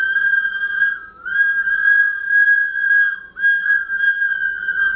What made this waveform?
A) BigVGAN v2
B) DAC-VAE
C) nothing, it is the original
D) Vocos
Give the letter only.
C